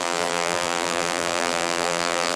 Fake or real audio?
fake